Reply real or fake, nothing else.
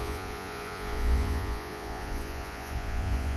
fake